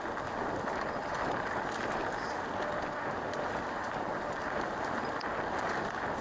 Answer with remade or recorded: recorded